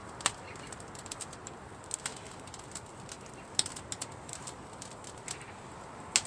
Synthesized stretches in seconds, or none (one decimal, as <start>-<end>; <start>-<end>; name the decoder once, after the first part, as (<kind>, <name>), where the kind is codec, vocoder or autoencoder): 0.0-1.5 (vocoder, BigVGAN v2); 2.1-3.0